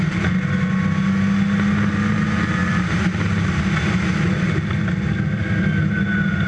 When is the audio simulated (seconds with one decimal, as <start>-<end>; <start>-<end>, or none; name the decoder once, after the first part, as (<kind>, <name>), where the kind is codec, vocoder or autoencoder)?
none